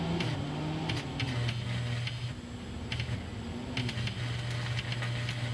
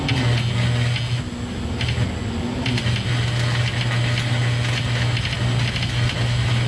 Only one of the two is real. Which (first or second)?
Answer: second